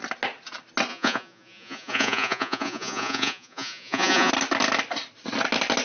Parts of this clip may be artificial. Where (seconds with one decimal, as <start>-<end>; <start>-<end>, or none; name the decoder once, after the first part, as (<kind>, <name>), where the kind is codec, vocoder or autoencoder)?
0.9-4.3 (vocoder, Vocos)